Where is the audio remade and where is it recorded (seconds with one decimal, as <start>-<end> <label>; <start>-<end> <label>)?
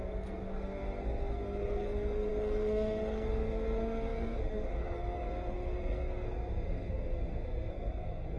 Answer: 0.0-8.4 remade